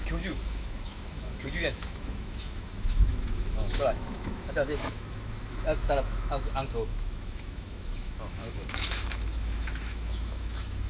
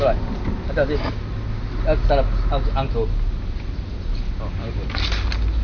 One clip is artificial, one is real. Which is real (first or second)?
second